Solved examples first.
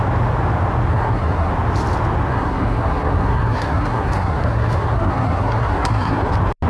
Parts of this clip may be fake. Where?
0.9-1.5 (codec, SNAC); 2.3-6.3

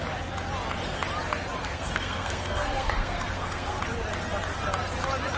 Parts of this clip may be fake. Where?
1.6-3.8 (codec, SNAC)

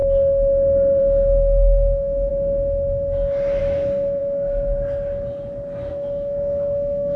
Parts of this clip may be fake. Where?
1.0-2.3 (autoencoder, DAC-VAE); 3.6-4.2; 5.9-7.2

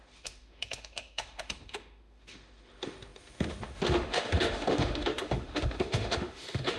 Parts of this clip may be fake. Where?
0.0-6.8 (autoencoder, DAC-VAE)

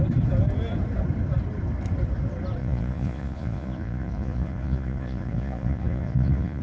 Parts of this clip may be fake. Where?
2.6-6.6 (vocoder, Vocos)

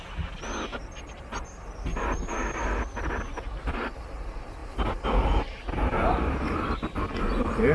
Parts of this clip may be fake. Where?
none